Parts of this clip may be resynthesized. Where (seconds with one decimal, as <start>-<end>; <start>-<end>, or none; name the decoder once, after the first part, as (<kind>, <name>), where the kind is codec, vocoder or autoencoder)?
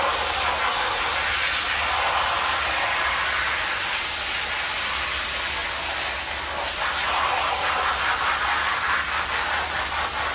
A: none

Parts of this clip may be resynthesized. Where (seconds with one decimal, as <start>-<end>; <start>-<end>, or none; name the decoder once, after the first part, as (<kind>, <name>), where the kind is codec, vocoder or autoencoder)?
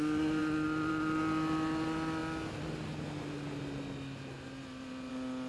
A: none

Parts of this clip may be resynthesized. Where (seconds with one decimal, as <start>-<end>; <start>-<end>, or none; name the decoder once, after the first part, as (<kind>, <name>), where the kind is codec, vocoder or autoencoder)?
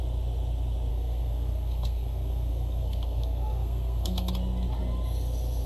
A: 0.9-4.3 (codec, SNAC)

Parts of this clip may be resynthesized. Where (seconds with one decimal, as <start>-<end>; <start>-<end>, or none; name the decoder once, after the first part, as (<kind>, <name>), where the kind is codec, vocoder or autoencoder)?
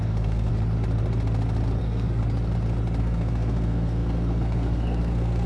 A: 0.0-0.5 (codec, SNAC); 1.8-2.2; 3.0-5.5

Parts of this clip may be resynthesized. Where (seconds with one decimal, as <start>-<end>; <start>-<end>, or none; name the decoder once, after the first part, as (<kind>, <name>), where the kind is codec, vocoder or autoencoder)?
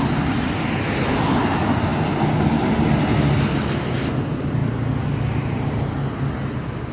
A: none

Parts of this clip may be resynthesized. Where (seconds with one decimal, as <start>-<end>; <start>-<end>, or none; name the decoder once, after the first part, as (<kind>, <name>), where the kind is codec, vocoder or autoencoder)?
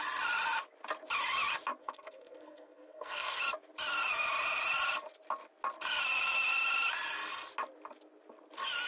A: 1.8-3.4 (codec, SNAC)